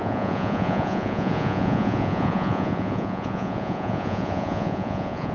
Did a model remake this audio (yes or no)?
yes